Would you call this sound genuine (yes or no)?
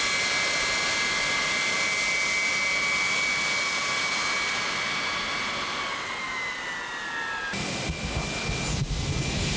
yes